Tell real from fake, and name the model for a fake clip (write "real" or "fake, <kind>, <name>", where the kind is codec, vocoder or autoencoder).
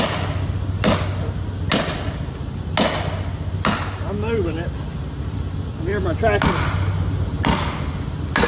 real